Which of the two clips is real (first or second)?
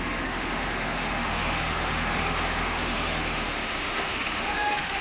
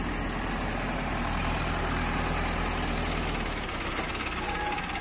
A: second